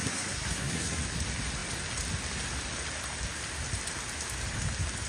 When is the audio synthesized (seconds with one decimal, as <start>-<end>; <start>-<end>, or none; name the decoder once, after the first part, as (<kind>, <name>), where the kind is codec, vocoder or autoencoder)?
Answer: 0.0-1.0 (codec, SNAC)